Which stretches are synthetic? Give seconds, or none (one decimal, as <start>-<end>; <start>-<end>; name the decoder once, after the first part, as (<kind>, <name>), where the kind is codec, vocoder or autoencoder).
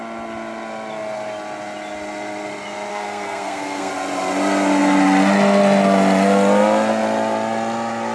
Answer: 2.9-3.9 (codec, SNAC)